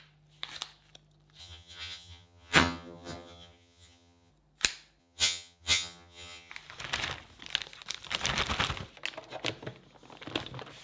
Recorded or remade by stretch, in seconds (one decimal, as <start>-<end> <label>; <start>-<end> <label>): 0.0-1.4 recorded; 1.4-4.3 remade; 4.3-5.0 recorded; 5.0-6.5 remade; 6.5-10.8 recorded